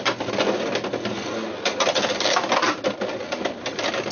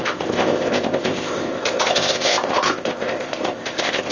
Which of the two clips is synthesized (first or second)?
second